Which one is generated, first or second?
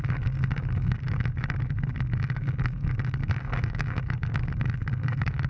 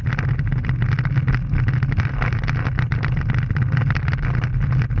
first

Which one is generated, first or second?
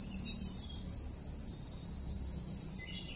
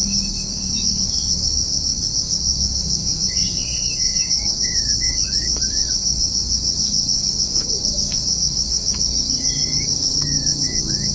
second